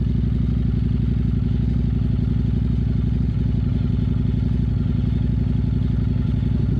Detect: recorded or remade recorded